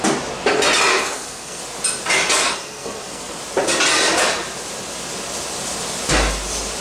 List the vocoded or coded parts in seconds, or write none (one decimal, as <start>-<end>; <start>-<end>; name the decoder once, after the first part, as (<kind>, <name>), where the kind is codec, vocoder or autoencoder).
0.9-1.6 (codec, SNAC); 2.4-3.4